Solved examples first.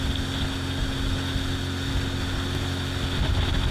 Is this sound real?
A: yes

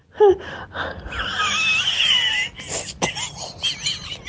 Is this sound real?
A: yes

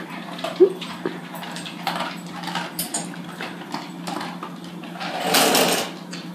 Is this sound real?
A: yes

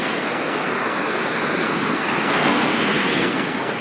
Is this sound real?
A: no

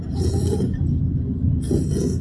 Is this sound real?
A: yes